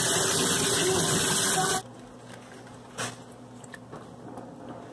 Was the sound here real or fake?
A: real